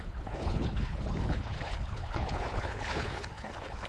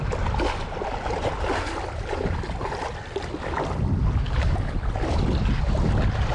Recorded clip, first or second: second